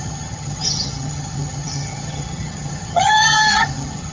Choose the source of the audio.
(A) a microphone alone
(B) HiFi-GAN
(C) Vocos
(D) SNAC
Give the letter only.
B